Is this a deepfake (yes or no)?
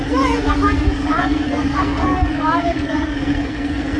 yes